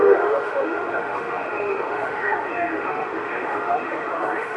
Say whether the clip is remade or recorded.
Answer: remade